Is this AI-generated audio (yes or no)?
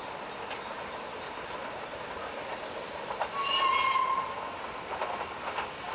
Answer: no